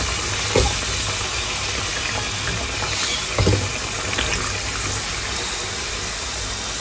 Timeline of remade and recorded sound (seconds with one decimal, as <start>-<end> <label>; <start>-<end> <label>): 0.0-6.8 recorded